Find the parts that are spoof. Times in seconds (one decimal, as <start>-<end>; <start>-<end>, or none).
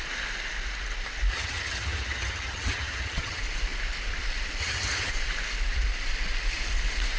1.3-3.4; 4.6-5.1